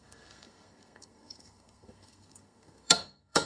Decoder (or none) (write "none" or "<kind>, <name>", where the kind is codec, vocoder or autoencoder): codec, SNAC